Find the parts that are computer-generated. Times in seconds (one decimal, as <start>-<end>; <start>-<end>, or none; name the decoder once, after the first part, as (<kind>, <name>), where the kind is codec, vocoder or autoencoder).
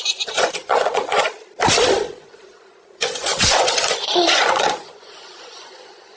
0.0-1.2 (vocoder, Vocos); 2.1-6.2